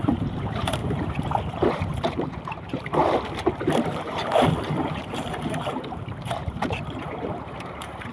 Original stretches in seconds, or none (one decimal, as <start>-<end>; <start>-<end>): 3.0-3.6